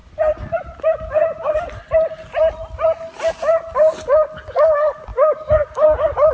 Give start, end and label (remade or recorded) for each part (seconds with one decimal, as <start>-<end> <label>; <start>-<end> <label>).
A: 0.0-3.3 remade; 3.3-5.1 recorded; 5.1-6.3 remade